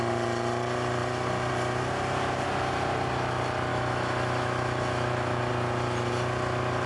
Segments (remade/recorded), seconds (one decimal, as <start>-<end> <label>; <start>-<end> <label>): 0.0-3.7 recorded; 3.7-5.5 remade; 5.5-6.9 recorded